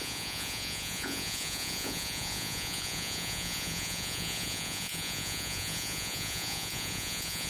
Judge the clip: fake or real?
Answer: fake